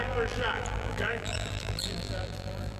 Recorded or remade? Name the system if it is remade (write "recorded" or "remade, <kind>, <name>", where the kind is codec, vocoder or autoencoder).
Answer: remade, vocoder, BigVGAN v2